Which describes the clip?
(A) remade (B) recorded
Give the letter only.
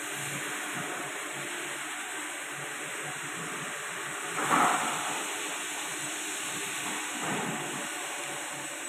B